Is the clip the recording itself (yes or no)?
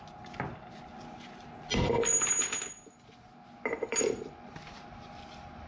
yes